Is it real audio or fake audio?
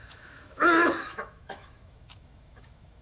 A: fake